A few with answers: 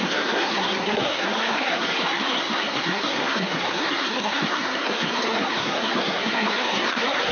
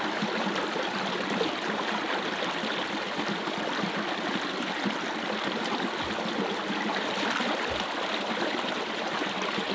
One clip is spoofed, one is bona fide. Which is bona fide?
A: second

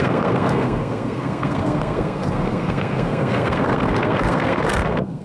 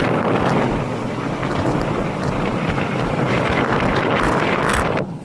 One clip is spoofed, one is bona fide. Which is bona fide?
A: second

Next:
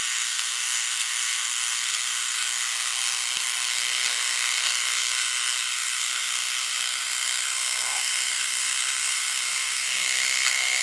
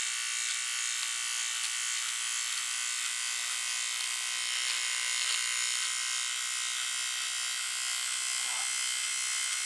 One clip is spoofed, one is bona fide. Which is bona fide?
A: second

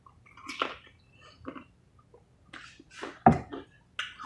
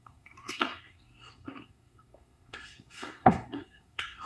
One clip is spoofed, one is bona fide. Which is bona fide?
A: first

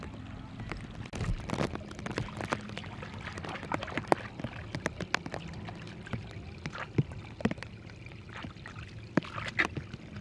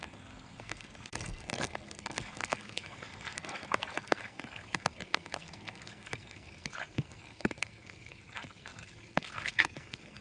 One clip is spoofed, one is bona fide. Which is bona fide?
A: first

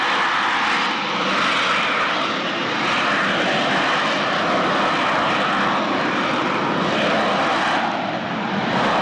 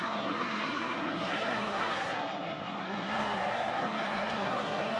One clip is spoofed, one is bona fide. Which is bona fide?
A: first